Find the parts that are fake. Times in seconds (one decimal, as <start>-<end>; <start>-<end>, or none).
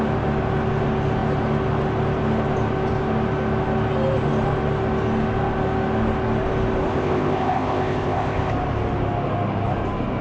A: 6.9-8.5